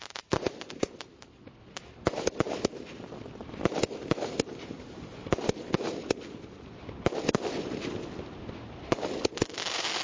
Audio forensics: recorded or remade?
recorded